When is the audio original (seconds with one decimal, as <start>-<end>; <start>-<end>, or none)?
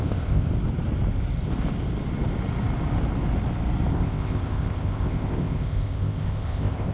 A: 0.5-3.9